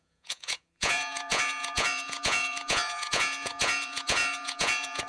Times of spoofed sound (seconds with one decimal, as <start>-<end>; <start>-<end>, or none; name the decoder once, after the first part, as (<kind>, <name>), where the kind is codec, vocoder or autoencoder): 0.0-5.1 (vocoder, Vocos)